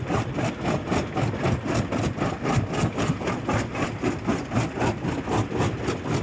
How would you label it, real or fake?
real